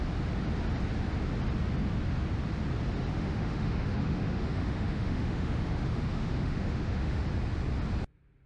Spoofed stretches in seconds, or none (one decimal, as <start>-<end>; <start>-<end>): 3.1-7.2